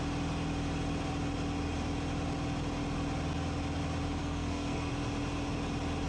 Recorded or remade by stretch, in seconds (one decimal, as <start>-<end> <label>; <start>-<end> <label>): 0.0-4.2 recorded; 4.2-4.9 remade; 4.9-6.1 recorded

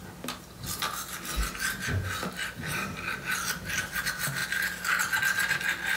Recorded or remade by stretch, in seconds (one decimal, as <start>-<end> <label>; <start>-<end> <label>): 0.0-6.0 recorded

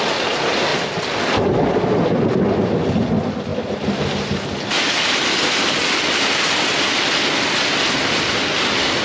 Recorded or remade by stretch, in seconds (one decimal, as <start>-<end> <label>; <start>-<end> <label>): 0.0-9.0 recorded

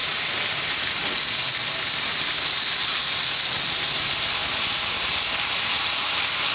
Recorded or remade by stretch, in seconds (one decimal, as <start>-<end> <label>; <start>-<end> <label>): 0.0-4.4 recorded; 4.4-5.6 remade; 5.6-6.5 recorded